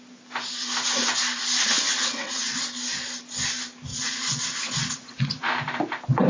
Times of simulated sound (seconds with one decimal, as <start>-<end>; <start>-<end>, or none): 1.6-2.6; 3.9-5.5

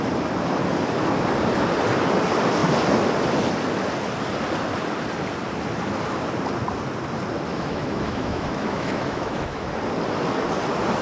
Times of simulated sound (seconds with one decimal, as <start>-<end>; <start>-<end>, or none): 7.5-9.7

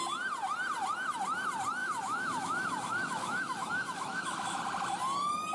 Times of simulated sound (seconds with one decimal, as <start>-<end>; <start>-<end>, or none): 1.8-4.6

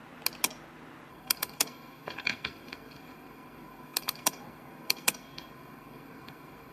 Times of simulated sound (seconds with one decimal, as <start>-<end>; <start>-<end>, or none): 1.1-6.7

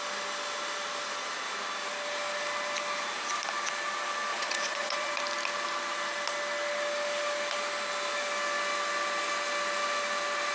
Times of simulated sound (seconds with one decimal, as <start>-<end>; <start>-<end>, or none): 4.3-5.1

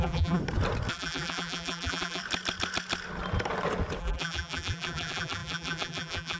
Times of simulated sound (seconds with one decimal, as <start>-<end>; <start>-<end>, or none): 0.0-0.4; 0.9-2.2; 4.0-6.4

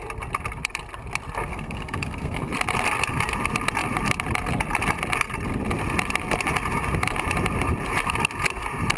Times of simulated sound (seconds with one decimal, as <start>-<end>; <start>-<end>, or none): 1.5-2.5